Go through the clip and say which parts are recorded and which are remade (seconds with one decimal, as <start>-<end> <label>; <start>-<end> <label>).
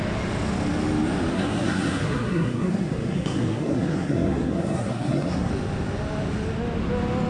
0.0-1.3 recorded; 1.3-5.5 remade; 5.5-7.3 recorded